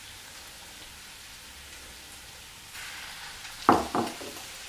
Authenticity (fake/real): real